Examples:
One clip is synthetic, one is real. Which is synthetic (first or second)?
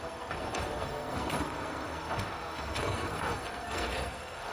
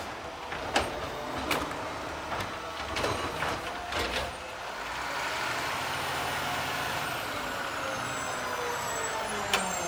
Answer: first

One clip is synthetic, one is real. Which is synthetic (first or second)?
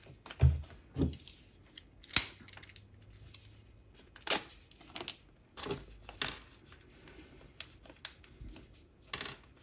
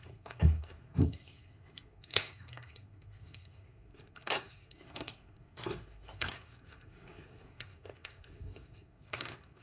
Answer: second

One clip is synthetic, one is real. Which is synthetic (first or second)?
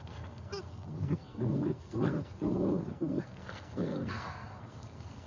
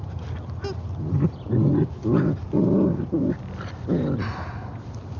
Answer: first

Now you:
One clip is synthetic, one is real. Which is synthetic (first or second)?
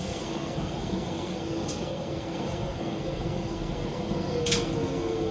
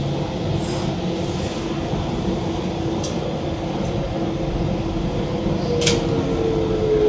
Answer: first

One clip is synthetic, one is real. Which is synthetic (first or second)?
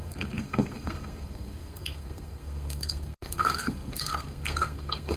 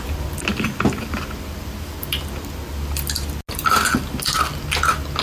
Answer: first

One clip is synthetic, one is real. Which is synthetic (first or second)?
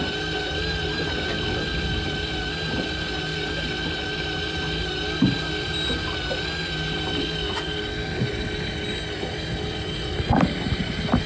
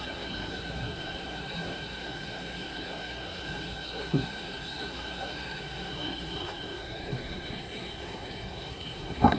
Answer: second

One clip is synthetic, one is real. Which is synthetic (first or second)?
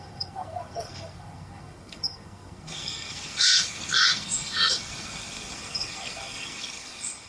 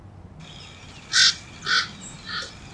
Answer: first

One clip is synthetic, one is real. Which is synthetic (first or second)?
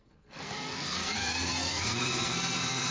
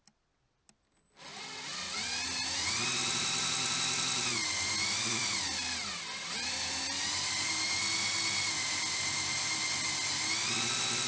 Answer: first